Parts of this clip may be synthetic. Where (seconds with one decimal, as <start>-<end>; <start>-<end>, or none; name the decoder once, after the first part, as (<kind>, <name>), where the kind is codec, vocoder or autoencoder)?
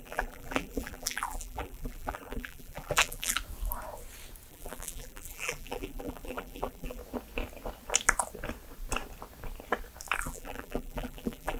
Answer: 0.0-3.4 (vocoder, BigVGAN v2); 4.5-7.0; 10.2-11.6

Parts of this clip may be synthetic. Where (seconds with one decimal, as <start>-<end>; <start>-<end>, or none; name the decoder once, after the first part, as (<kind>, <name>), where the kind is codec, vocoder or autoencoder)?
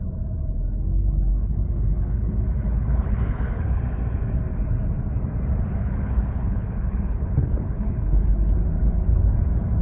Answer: 1.3-3.8 (codec, HILCodec); 5.8-8.5